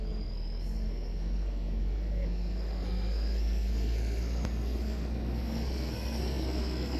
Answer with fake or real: fake